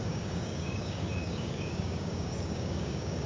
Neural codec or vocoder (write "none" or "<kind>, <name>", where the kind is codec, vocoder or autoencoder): codec, DAC